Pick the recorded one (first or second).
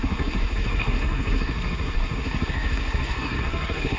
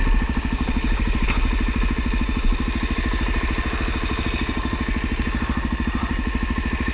second